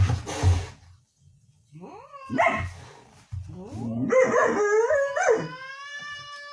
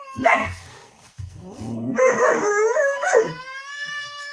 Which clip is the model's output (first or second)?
second